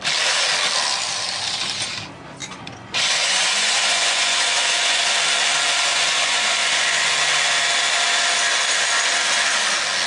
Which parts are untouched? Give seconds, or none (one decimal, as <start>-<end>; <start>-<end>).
0.0-2.4; 5.1-5.9; 7.1-10.1